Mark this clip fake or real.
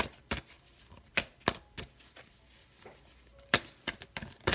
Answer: real